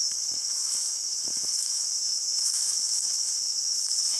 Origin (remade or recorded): remade